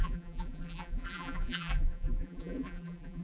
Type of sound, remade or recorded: remade